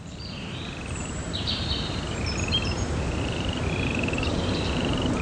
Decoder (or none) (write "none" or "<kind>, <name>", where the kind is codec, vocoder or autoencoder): vocoder, BigVGAN v2